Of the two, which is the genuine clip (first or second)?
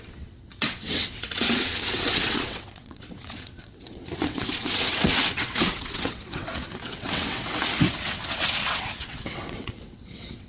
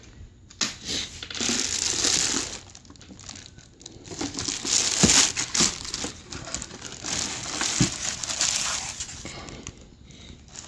second